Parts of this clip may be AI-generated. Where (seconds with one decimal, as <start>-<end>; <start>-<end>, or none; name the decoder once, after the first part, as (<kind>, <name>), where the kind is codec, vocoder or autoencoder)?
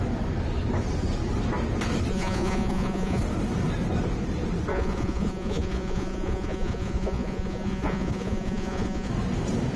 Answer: 2.1-3.2 (vocoder, Vocos); 4.7-9.1